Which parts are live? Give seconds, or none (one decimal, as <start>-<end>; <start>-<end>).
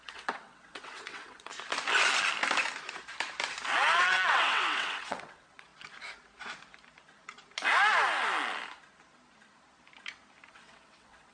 1.5-4.0; 5.7-10.5